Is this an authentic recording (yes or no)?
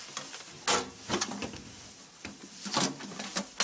yes